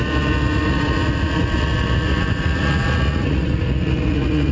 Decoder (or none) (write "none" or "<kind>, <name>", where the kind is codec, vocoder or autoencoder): vocoder, Vocos